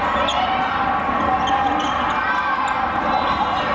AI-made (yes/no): no